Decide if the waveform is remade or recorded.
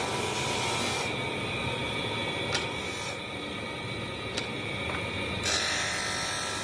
recorded